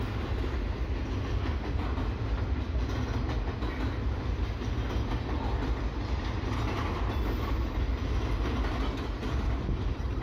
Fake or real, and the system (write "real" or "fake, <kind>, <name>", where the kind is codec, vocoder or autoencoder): real